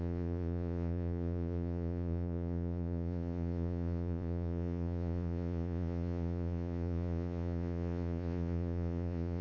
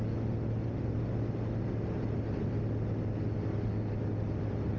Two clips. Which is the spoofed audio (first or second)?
first